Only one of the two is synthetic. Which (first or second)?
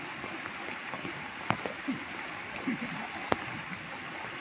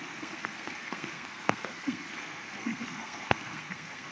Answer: second